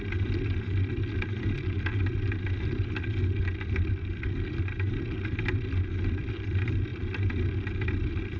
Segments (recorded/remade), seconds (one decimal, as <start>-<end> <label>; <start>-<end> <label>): 0.0-8.4 recorded